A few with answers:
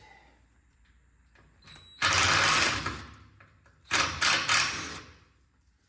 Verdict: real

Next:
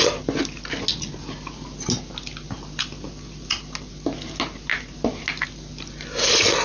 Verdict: real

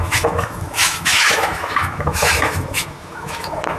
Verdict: fake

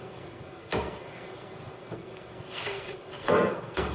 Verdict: fake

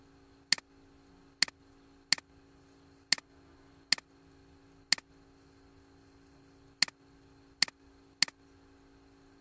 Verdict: real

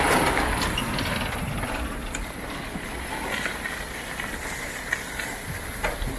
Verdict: real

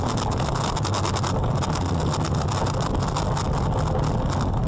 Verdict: real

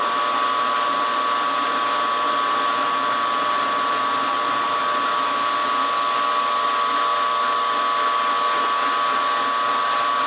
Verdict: real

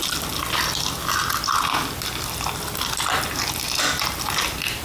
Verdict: real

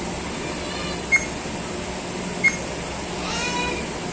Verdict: real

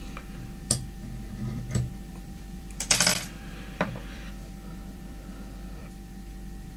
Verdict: fake